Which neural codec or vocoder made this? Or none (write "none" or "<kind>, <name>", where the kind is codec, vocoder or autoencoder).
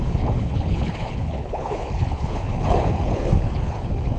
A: codec, HILCodec